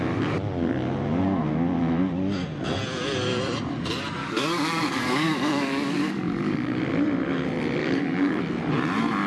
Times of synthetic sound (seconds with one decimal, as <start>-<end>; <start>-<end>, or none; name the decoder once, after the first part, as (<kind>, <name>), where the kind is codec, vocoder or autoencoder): 4.2-6.8 (codec, DAC); 7.8-8.4